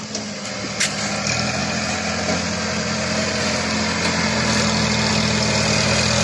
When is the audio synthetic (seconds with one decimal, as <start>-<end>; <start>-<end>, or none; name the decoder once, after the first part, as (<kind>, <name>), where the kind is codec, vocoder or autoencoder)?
none